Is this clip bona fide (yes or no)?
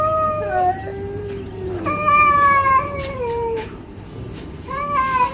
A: no